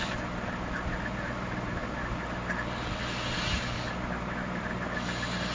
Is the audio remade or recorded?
recorded